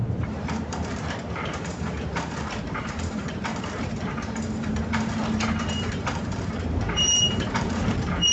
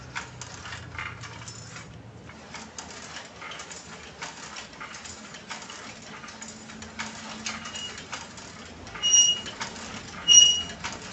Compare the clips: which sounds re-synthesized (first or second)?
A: first